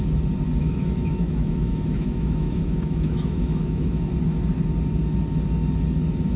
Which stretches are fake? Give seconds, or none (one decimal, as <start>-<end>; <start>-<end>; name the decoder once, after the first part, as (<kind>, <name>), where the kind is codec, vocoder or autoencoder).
0.6-4.1 (autoencoder, DAC-VAE)